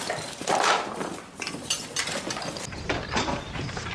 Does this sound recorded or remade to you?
recorded